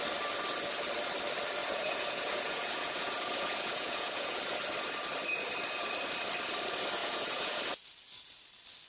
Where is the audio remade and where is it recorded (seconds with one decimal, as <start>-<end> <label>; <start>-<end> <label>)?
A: 0.0-1.6 recorded; 1.6-4.4 remade; 4.4-7.0 recorded; 7.0-7.6 remade; 7.6-8.9 recorded